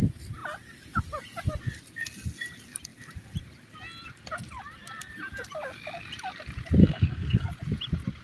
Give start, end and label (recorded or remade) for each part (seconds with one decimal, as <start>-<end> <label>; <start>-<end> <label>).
0.0-6.8 recorded; 6.8-7.5 remade; 7.5-8.2 recorded